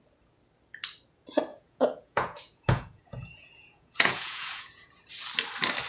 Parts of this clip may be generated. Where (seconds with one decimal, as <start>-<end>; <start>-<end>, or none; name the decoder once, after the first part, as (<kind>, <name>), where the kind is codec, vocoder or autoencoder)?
1.5-5.0 (vocoder, Vocos)